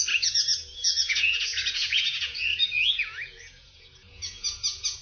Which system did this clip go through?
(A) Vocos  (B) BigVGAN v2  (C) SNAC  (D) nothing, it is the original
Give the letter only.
A